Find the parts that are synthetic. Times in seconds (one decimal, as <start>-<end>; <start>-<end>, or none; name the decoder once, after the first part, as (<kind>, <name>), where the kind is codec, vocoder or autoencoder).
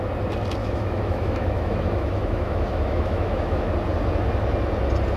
0.6-3.7 (autoencoder, DAC-VAE)